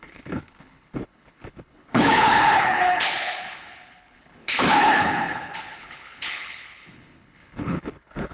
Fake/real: fake